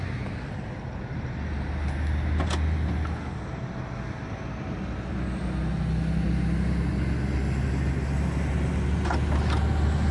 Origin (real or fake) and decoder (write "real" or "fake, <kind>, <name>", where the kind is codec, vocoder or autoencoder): real